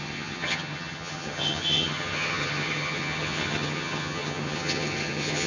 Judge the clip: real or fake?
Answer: fake